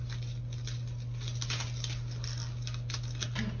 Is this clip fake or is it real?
real